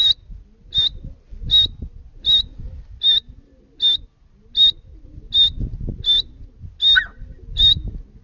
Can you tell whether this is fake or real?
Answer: real